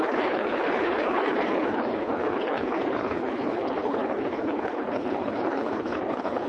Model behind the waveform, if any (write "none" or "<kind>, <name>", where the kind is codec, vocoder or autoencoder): codec, HILCodec